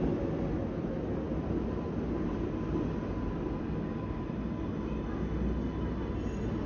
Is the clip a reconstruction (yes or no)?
no